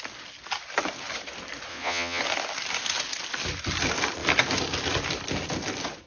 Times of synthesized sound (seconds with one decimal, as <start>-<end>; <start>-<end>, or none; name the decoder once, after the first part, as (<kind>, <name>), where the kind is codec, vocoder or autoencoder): 1.7-2.2 (vocoder, Vocos)